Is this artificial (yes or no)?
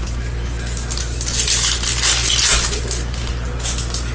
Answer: no